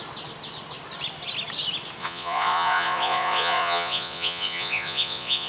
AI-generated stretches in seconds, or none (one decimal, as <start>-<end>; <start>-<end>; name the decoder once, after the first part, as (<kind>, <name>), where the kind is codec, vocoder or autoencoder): 2.0-5.5 (vocoder, Vocos)